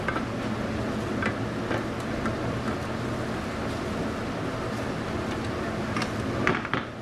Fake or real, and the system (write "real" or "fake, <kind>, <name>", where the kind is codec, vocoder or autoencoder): real